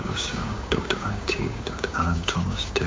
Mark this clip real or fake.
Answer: fake